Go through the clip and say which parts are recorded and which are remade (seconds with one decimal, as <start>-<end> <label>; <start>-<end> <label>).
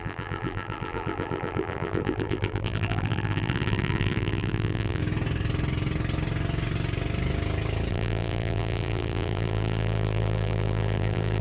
0.0-5.0 remade; 5.0-7.9 recorded; 7.9-11.4 remade